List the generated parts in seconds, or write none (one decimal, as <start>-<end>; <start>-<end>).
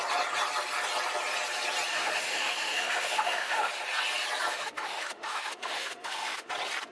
1.9-3.7; 4.5-6.5